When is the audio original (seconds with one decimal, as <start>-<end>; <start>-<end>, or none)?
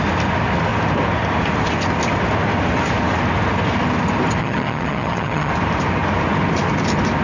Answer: 0.0-4.4; 5.5-7.2